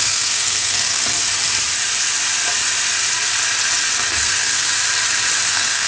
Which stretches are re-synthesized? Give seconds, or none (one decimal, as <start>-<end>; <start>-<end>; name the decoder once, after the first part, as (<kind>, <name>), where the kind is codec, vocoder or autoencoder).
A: 0.0-1.0 (codec, SNAC); 4.1-4.7; 5.5-5.9